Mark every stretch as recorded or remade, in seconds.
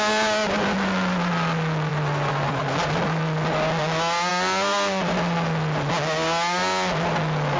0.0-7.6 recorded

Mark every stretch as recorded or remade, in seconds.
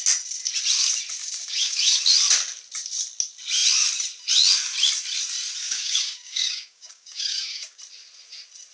0.0-1.2 recorded; 1.2-2.0 remade; 2.0-5.6 recorded; 5.6-7.8 remade; 7.8-8.7 recorded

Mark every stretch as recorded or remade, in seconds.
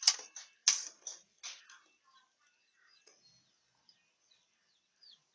0.0-5.3 recorded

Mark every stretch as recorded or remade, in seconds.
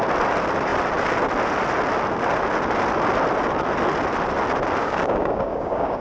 0.0-4.8 recorded; 4.8-6.0 remade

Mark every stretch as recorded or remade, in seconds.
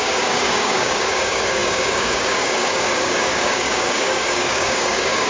0.0-5.3 remade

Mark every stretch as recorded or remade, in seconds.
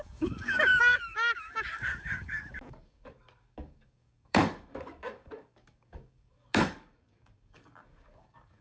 0.0-8.6 remade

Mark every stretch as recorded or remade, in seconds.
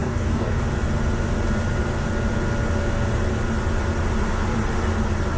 0.0-0.6 remade; 0.6-5.4 recorded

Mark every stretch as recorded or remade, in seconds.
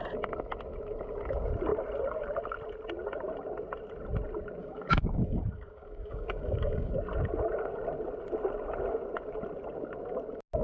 0.0-4.6 recorded; 4.6-6.9 remade; 6.9-10.6 recorded